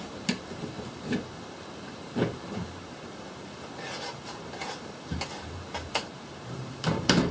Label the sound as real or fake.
fake